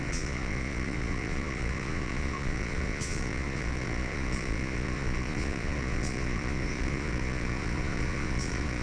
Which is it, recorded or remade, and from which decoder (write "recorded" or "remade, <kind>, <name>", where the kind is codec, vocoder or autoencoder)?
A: remade, vocoder, Vocos